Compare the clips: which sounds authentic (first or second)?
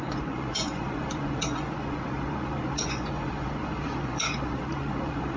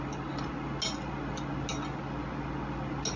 second